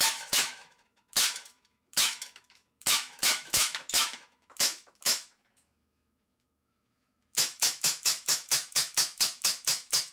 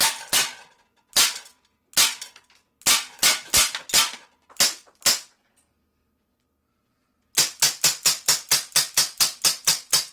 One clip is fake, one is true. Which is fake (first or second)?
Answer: first